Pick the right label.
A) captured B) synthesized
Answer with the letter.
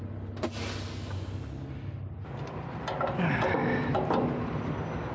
A